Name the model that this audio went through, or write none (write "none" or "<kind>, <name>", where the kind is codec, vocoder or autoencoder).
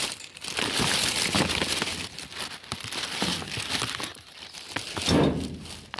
none